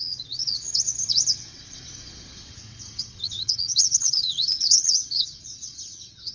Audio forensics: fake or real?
fake